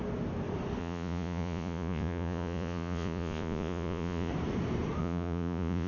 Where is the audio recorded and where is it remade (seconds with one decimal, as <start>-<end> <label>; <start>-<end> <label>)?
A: 0.0-0.8 recorded; 0.8-4.3 remade; 4.3-5.0 recorded; 5.0-5.9 remade